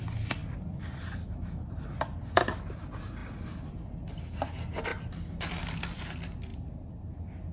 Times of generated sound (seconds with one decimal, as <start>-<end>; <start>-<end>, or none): 0.4-2.6; 4.9-5.8; 6.5-7.1